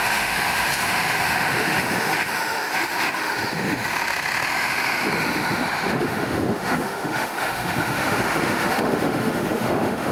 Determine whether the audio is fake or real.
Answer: fake